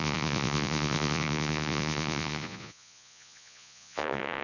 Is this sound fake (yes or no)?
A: yes